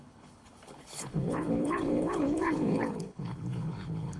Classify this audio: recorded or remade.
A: remade